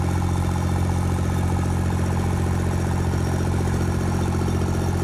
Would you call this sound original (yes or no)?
yes